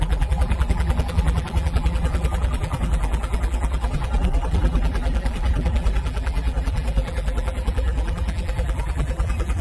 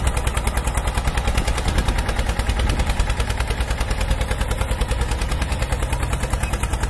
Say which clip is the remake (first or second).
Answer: first